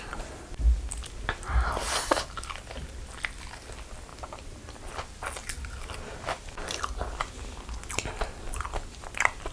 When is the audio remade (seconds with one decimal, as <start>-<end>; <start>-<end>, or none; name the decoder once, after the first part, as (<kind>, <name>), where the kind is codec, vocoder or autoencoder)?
4.1-8.6 (vocoder, BigVGAN v2)